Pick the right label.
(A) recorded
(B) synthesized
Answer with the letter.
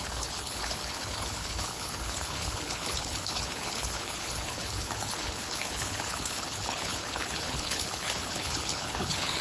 B